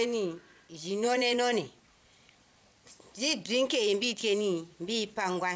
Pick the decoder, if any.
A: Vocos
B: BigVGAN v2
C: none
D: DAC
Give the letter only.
A